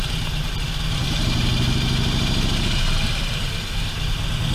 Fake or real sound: real